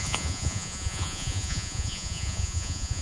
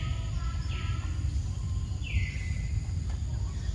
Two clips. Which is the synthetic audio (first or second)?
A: first